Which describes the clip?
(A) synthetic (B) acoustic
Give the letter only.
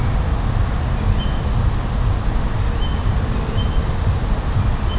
B